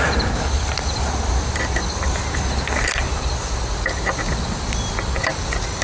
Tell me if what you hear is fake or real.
real